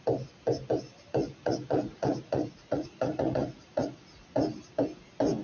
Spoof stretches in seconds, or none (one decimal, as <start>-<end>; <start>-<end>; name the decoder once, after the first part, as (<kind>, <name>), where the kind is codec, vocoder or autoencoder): 1.2-4.2 (vocoder, Vocos)